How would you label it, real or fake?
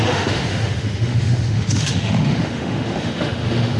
fake